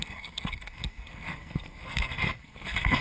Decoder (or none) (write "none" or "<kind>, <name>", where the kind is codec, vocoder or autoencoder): codec, SNAC